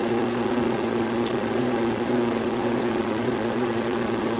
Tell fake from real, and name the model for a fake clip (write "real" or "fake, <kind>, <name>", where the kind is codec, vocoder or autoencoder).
fake, vocoder, Vocos